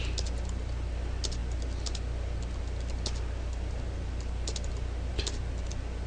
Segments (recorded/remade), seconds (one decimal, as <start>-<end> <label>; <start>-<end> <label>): 0.0-6.1 recorded